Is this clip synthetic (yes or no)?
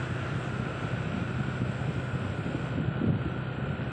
no